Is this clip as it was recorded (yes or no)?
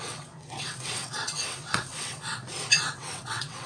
no